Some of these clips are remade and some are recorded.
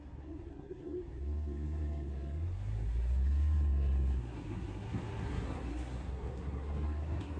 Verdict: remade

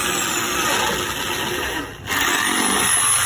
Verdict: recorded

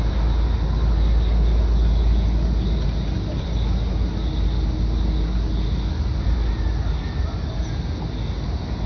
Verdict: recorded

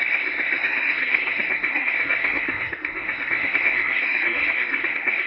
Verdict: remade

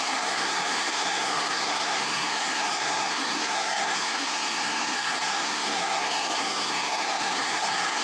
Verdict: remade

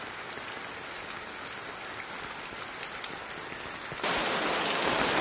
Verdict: recorded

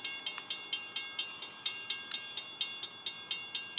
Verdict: recorded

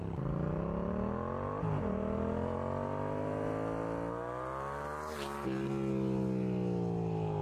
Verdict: recorded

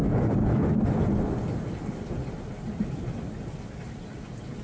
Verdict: recorded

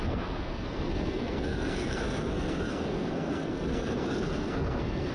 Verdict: remade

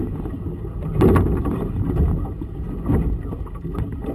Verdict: recorded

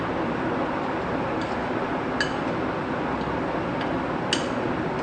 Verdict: recorded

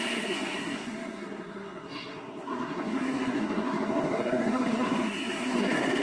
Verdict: remade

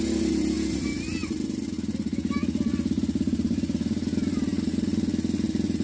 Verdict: recorded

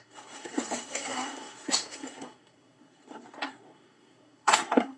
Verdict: remade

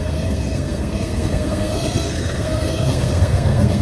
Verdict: remade